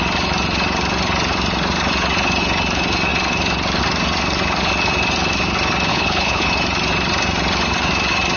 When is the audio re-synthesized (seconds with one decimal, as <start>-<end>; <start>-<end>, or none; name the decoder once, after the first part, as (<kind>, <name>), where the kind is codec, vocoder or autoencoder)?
5.9-6.5 (codec, HILCodec)